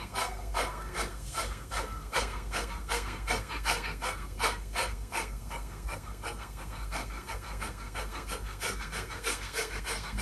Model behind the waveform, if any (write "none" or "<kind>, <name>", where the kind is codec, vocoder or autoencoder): codec, SNAC